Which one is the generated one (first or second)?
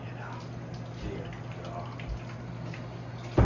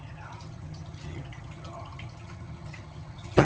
second